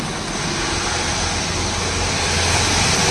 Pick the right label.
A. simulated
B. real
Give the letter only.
B